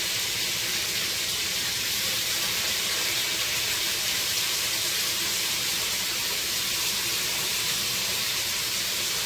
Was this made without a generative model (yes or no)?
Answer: no